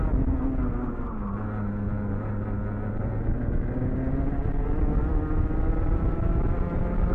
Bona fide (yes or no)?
yes